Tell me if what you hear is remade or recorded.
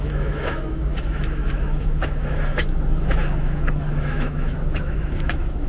remade